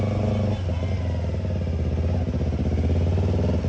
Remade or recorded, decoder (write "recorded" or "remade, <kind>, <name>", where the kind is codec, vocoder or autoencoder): recorded